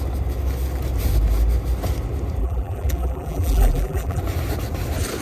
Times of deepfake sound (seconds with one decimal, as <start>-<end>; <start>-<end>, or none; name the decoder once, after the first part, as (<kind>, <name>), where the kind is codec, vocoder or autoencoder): 2.4-4.2 (vocoder, BigVGAN v2)